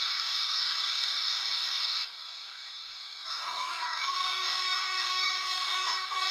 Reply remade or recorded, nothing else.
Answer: remade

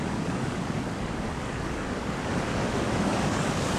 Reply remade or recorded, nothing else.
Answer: remade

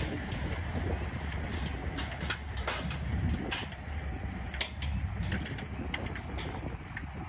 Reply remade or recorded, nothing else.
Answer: recorded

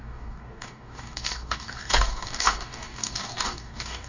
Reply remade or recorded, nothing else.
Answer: remade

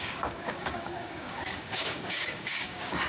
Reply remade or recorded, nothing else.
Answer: remade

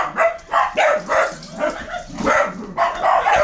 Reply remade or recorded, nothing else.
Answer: recorded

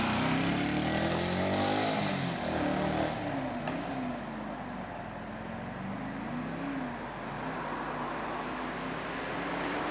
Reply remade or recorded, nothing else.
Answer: recorded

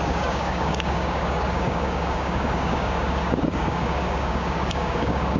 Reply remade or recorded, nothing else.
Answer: remade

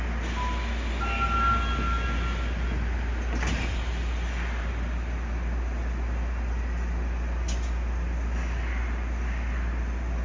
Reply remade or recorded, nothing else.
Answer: recorded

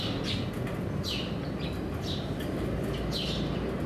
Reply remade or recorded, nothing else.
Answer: recorded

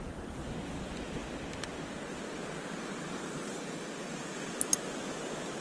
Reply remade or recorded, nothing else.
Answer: recorded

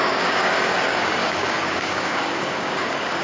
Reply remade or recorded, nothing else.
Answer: remade